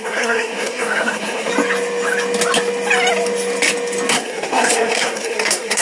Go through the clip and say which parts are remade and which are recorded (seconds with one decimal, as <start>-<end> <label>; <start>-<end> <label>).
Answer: 0.0-1.5 remade; 1.5-4.1 recorded; 4.1-5.8 remade